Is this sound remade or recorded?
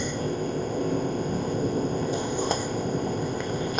remade